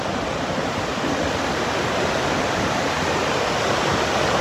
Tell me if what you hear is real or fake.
real